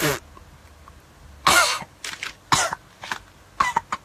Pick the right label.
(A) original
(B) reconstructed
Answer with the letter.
A